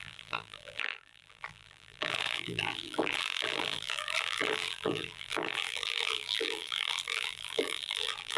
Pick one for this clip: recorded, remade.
remade